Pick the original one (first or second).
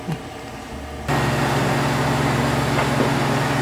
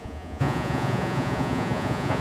first